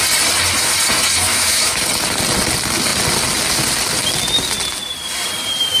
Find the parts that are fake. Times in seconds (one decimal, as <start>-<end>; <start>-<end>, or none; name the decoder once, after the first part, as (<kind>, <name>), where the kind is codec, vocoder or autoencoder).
1.3-1.8 (autoencoder, DAC-VAE)